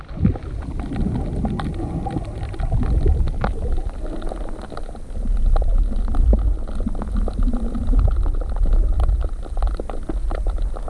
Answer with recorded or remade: recorded